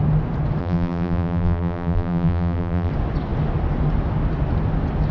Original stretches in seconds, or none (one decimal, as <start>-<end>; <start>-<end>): 0.0-0.6; 2.9-5.1